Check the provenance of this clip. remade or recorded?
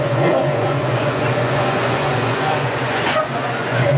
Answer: remade